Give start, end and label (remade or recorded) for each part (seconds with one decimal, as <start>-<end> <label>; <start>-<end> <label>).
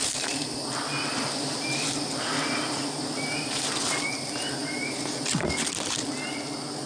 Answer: 0.0-6.9 recorded